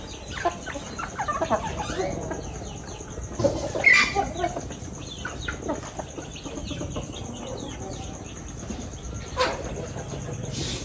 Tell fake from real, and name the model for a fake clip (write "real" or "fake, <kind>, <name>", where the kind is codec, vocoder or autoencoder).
real